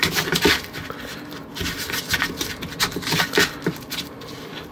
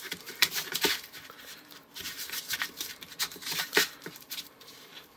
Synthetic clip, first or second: second